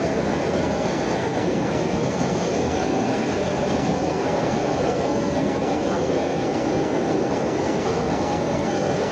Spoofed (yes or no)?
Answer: yes